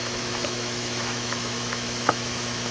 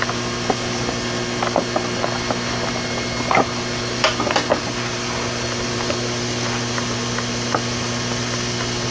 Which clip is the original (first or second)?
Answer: second